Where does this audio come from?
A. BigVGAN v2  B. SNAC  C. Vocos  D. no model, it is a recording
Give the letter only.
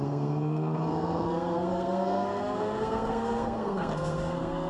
B